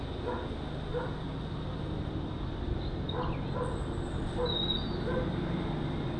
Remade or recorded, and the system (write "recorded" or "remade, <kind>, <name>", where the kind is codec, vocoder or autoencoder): recorded